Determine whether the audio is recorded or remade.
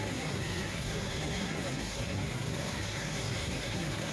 remade